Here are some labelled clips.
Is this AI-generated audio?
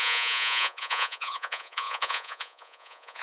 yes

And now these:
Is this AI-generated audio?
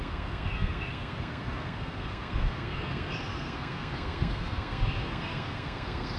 yes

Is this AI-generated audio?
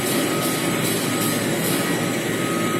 no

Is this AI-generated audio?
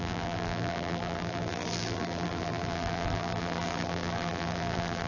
yes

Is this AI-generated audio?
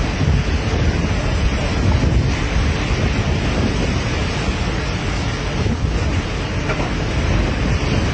no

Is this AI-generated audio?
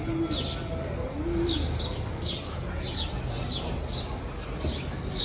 no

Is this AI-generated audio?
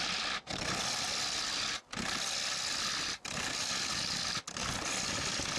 no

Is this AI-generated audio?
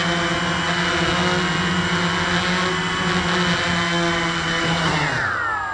no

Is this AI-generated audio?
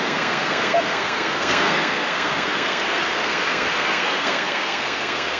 yes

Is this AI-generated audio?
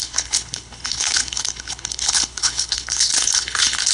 yes